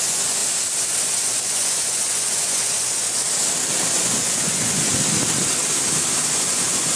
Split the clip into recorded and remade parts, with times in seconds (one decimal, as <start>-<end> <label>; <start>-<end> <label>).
0.0-0.4 remade; 0.4-1.0 recorded; 1.0-3.2 remade; 3.2-3.9 recorded; 3.9-4.9 remade; 4.9-6.3 recorded; 6.3-7.0 remade